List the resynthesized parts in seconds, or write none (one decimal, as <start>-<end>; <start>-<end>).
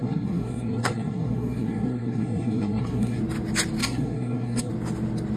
0.0-3.2; 3.8-4.7